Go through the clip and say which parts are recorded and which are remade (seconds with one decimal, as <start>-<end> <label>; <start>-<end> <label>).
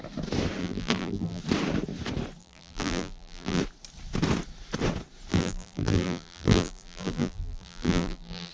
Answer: 0.0-0.6 recorded; 0.6-1.4 remade; 1.4-2.4 recorded; 2.4-3.6 remade; 3.6-5.3 recorded; 5.3-8.5 remade